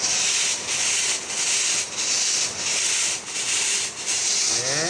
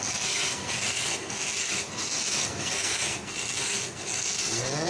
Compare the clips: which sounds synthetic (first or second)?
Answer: second